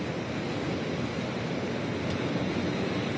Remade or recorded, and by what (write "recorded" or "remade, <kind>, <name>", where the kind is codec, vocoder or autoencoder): recorded